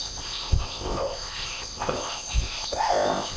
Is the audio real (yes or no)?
no